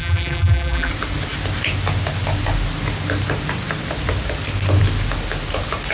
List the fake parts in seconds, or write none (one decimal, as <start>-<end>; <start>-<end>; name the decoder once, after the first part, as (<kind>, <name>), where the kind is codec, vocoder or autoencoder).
0.0-0.9 (vocoder, BigVGAN v2)